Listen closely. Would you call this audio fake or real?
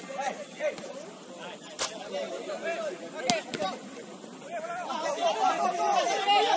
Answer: real